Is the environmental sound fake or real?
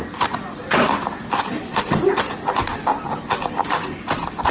real